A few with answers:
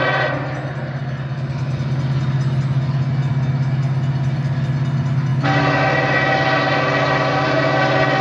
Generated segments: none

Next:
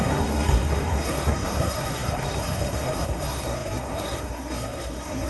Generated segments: 0.0-5.3

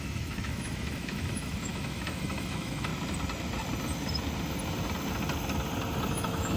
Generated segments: 0.0-2.9; 6.1-6.6

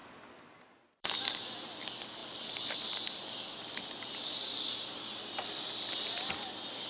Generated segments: 0.0-1.3; 2.2-6.3

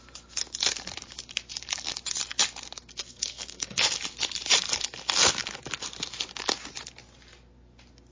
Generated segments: 3.0-3.8

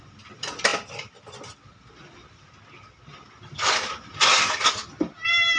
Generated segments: none